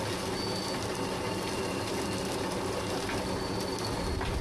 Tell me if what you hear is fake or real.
real